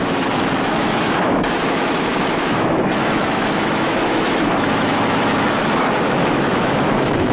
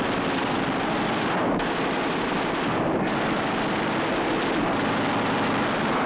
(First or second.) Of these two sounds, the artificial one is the first